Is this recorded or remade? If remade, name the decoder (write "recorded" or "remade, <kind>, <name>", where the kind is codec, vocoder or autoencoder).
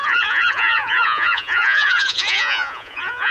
remade, vocoder, Vocos